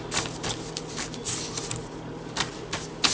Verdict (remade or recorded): recorded